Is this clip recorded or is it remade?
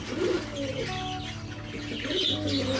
recorded